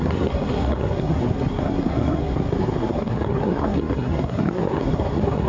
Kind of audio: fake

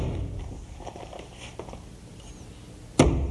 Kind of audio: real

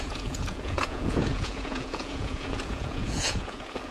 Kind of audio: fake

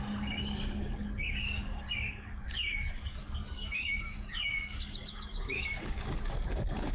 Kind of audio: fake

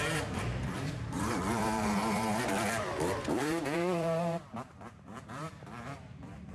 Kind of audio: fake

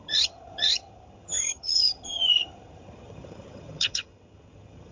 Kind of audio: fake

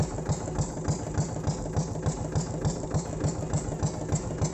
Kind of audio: real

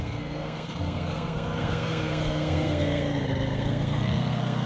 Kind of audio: fake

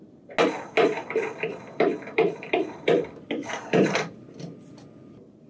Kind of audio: real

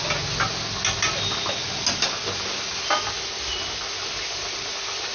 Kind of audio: real